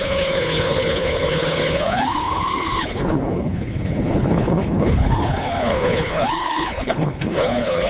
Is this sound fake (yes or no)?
yes